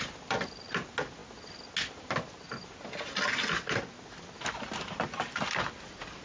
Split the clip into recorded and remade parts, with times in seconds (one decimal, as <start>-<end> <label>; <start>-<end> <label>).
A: 0.0-6.2 recorded